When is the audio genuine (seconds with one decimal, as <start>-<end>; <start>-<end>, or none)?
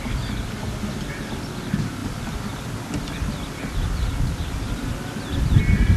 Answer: 0.0-2.0; 5.6-6.0